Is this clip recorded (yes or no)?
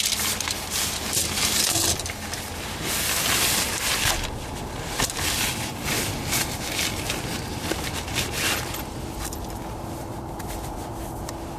yes